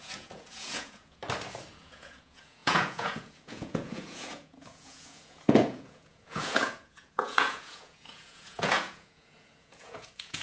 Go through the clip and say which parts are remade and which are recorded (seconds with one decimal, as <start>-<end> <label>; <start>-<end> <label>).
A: 0.0-1.2 remade; 1.2-1.7 recorded; 1.7-10.4 remade